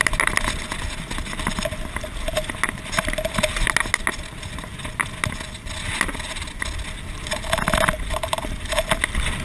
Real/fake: real